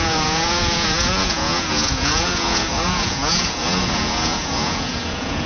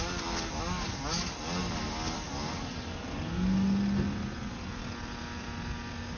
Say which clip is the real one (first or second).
second